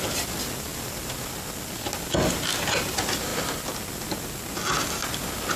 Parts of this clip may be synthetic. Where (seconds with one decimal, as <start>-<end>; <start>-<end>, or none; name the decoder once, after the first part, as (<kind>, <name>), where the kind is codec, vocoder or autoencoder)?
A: none